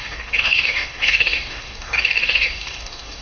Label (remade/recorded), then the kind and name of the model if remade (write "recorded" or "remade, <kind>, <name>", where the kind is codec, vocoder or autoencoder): remade, codec, DAC